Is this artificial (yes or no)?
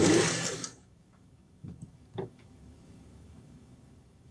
yes